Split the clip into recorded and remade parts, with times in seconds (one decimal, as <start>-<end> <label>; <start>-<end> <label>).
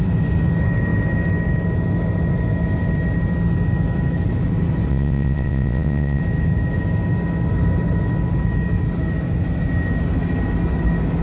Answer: 0.0-4.9 recorded; 4.9-6.2 remade; 6.2-11.2 recorded